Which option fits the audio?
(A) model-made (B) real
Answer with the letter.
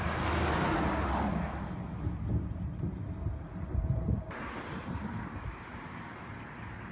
B